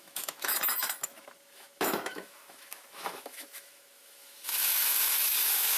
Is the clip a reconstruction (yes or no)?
yes